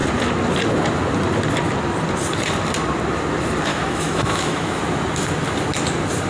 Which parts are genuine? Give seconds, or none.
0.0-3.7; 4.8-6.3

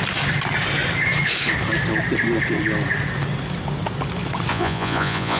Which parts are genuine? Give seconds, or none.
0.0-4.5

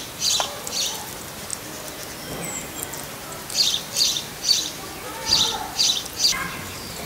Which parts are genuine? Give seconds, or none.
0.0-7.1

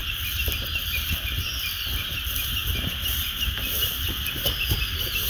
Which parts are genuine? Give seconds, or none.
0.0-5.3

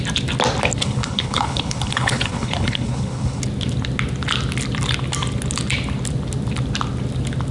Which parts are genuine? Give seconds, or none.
0.0-0.8; 3.4-7.5

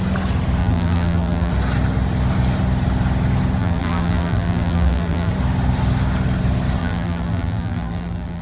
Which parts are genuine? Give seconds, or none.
0.0-0.6; 1.5-3.6; 5.3-6.8

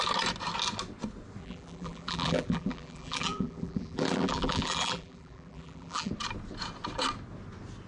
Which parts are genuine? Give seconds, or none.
0.0-1.4; 6.1-7.9